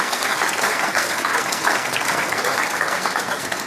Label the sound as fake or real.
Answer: fake